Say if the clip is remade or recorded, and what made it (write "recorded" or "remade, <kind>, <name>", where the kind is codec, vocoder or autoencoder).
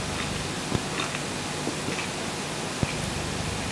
recorded